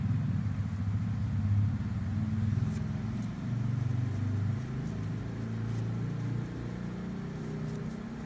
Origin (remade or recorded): recorded